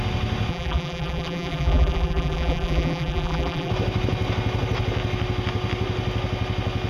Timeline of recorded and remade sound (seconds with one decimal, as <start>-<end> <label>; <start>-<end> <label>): 0.0-0.5 recorded; 0.5-3.7 remade; 3.7-6.9 recorded

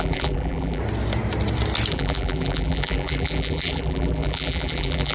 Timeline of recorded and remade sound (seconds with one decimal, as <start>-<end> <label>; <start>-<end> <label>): 0.0-0.8 remade; 0.8-1.9 recorded; 1.9-5.1 remade

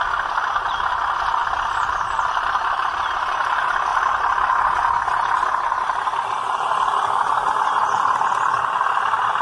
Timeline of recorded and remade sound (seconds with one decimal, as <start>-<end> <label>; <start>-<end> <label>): 0.0-9.4 recorded

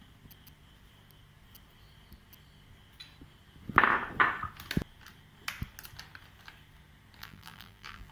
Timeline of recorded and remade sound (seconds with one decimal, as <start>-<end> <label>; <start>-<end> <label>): 0.0-7.2 recorded; 7.2-8.1 remade

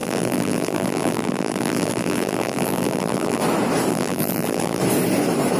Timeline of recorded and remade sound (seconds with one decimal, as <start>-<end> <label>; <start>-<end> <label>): 0.0-3.4 remade; 3.4-3.9 recorded; 3.9-4.8 remade; 4.8-5.6 recorded

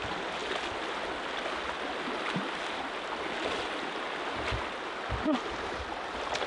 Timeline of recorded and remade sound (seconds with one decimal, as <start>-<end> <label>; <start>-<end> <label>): 0.0-6.5 recorded

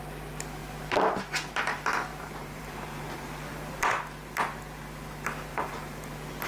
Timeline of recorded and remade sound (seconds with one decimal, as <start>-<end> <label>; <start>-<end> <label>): 0.0-2.1 recorded; 2.1-3.7 remade; 3.7-5.5 recorded; 5.5-6.1 remade; 6.1-6.5 recorded